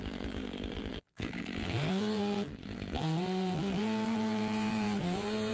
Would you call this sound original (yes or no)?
no